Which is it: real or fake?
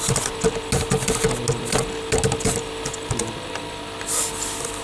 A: real